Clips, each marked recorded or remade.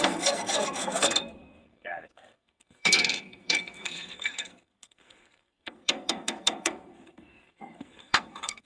remade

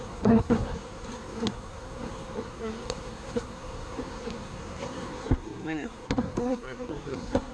remade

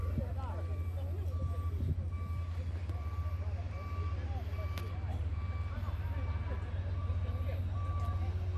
recorded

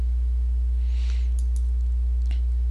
recorded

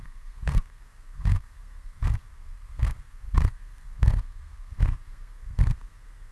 remade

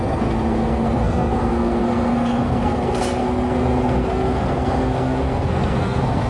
remade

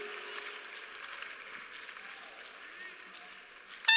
recorded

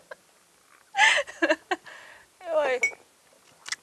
recorded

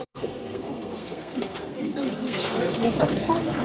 remade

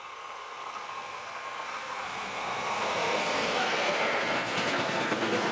remade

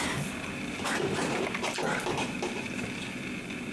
recorded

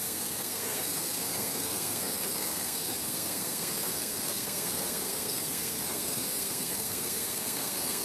remade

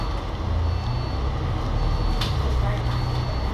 recorded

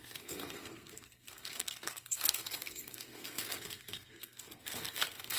remade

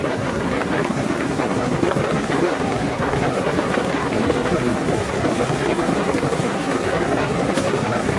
remade